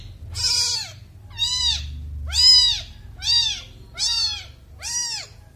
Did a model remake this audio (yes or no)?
no